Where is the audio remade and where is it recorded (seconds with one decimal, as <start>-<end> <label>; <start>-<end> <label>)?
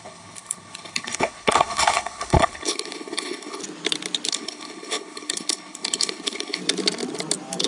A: 0.0-3.6 remade; 3.6-4.3 recorded; 4.3-6.6 remade; 6.6-7.7 recorded